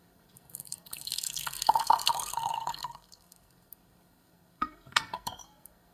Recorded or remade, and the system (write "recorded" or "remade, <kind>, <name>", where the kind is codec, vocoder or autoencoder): remade, codec, SNAC